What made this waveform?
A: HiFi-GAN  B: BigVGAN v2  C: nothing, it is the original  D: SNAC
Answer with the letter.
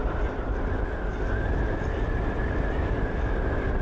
C